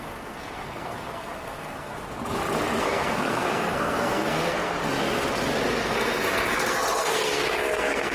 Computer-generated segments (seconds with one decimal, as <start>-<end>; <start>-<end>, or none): 0.0-1.9; 2.8-4.7; 5.8-8.1